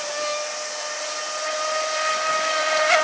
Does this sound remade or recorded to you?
recorded